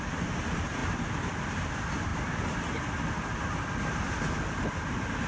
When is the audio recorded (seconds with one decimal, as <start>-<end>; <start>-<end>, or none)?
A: 0.0-5.3